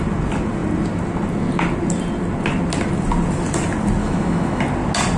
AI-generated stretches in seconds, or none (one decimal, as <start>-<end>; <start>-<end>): 4.0-4.6